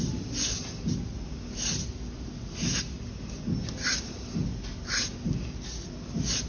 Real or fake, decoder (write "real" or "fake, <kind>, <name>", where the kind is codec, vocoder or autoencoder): real